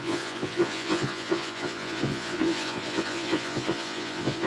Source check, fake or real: fake